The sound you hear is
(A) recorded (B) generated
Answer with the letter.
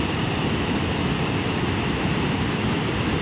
A